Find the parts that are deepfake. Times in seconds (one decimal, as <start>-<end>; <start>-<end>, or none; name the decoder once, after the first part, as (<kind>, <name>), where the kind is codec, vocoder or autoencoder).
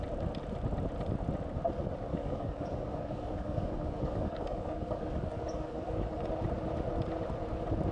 2.1-6.3 (codec, DAC)